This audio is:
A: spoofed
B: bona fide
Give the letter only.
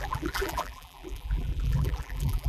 A